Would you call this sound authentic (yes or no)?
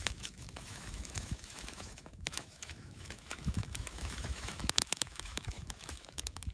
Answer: no